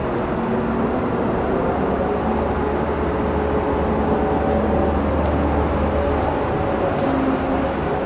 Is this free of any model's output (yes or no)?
yes